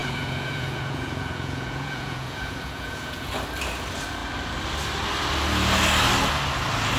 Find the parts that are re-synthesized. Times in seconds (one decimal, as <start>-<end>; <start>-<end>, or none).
0.0-3.3